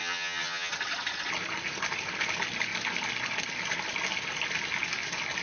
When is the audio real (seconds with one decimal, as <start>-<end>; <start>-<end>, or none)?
0.7-5.4